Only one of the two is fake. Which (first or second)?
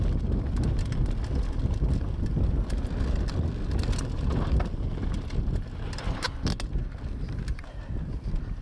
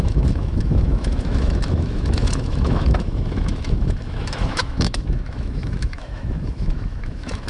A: second